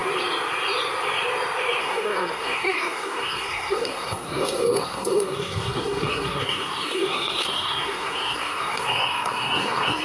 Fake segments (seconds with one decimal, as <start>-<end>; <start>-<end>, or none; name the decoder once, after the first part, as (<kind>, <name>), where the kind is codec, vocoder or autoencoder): 1.8-10.0 (codec, SNAC)